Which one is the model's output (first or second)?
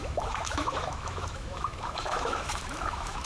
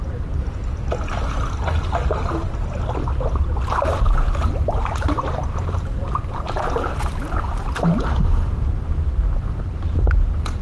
first